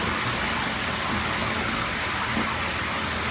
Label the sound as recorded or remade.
recorded